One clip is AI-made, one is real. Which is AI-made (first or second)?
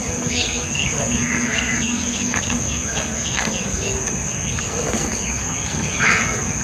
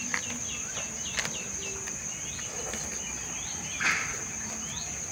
first